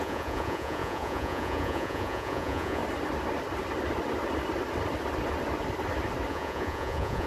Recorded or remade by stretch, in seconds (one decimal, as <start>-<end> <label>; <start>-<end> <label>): 0.0-2.8 remade; 2.8-6.3 recorded; 6.3-7.3 remade